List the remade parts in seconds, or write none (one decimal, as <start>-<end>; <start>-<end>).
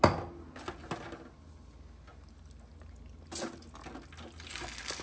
none